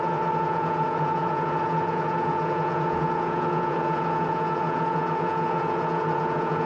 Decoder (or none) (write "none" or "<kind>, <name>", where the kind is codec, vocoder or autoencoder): vocoder, Vocos